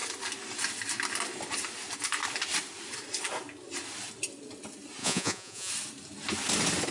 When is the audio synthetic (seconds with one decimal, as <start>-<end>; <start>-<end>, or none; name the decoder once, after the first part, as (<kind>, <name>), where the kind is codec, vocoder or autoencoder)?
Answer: 5.0-5.7 (vocoder, Vocos)